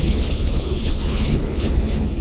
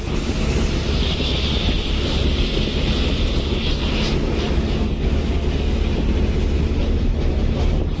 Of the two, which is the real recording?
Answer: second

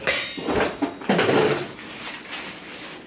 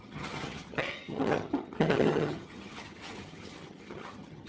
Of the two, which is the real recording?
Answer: first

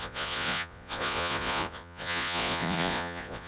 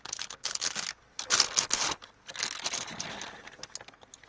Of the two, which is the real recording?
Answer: second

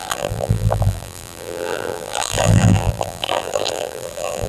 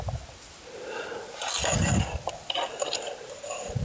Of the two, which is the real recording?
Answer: second